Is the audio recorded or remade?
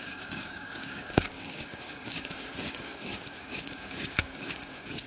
remade